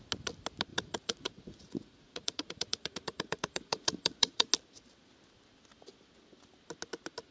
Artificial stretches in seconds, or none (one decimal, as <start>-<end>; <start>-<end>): 0.7-4.5